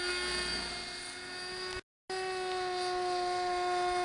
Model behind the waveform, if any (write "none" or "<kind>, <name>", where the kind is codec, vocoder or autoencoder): none